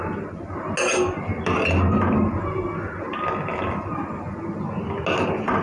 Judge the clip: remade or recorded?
recorded